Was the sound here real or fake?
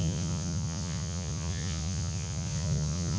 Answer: fake